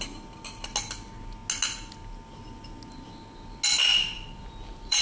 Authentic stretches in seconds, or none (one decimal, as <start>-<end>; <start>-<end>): 0.0-3.9